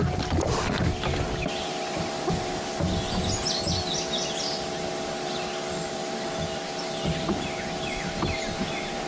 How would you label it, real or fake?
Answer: real